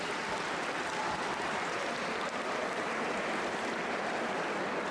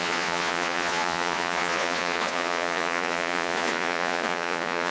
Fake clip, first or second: second